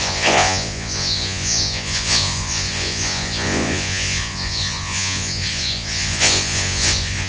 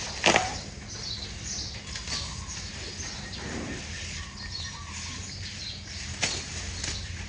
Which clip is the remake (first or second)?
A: first